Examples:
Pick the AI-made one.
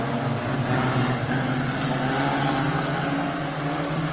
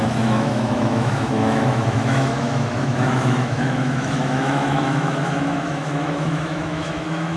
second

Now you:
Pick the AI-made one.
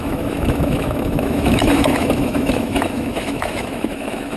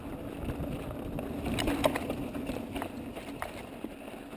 first